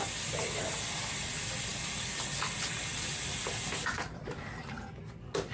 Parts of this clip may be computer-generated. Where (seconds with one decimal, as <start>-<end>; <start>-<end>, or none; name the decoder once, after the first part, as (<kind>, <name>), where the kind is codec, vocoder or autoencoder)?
none